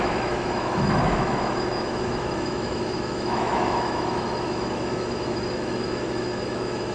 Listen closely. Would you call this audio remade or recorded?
remade